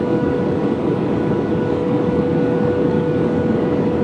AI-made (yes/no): yes